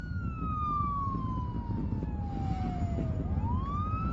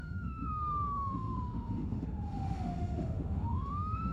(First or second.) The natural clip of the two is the first